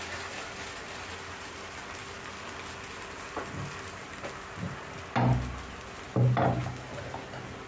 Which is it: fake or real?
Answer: real